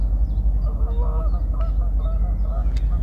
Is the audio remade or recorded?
recorded